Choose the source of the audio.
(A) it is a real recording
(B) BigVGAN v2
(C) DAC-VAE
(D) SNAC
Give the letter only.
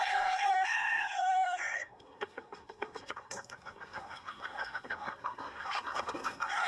D